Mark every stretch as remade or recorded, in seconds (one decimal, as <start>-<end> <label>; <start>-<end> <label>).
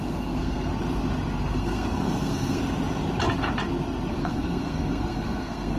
0.0-0.7 remade; 0.7-1.4 recorded; 1.4-2.6 remade; 2.6-4.2 recorded; 4.2-5.8 remade